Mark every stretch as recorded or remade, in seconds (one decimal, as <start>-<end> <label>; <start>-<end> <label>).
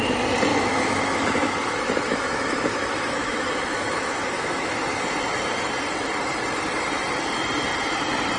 0.0-0.5 recorded; 0.5-5.0 remade; 5.0-8.4 recorded